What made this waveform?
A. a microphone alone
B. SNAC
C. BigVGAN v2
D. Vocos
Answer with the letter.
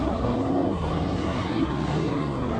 B